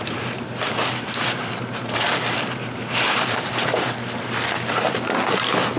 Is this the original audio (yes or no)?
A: no